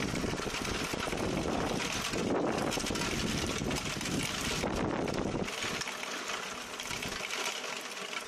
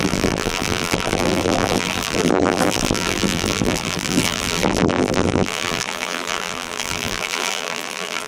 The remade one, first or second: second